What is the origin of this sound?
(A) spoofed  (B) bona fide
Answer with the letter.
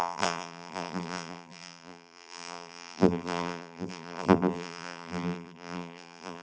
A